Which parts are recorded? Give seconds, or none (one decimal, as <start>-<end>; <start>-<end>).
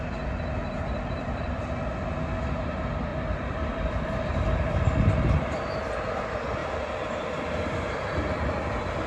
0.0-0.6; 1.6-3.1; 5.7-9.1